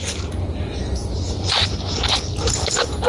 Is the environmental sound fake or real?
real